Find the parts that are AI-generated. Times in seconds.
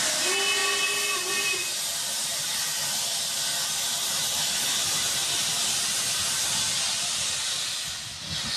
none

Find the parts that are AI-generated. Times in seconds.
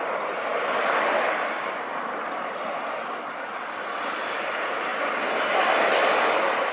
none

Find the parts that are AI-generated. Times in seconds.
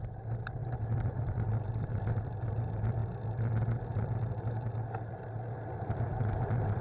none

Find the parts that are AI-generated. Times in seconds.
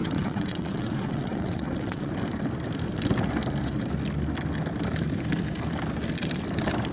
0.0-2.1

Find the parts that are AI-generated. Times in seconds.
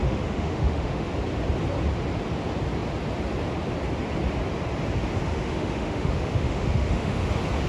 0.0-1.1; 5.3-7.3